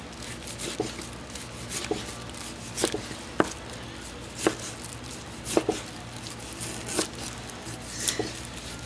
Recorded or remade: recorded